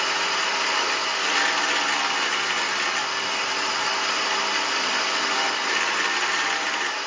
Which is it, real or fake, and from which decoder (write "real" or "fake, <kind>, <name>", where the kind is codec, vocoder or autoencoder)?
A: real